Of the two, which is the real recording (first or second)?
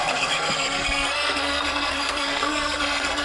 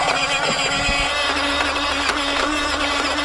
second